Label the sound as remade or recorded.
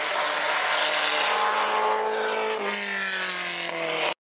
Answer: recorded